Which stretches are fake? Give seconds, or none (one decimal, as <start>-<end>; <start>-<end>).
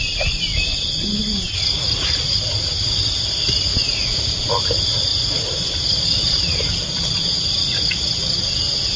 3.7-4.5